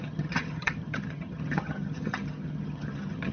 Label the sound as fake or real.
fake